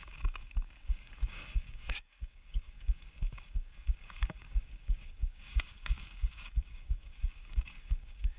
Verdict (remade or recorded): remade